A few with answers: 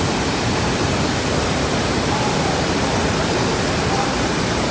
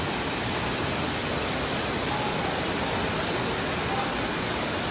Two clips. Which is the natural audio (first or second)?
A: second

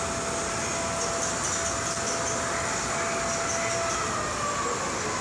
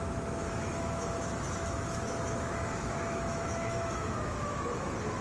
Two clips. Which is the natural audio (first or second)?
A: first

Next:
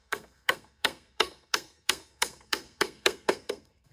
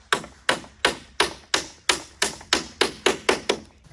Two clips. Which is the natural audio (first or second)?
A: second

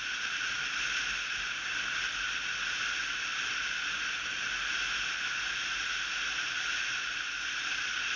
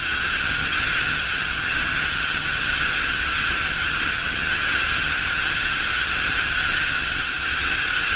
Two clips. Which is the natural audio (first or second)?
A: first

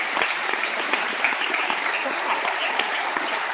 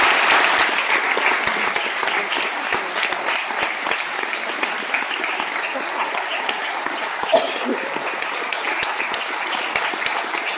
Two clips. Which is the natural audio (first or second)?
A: second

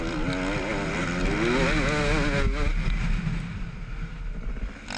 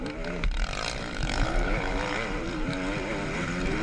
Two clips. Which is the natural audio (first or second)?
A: first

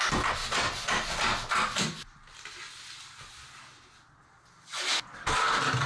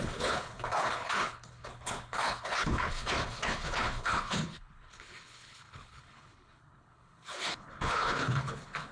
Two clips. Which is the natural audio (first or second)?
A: first